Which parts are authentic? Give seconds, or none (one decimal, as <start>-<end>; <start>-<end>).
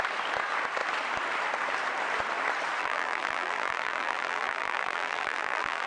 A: 0.0-2.8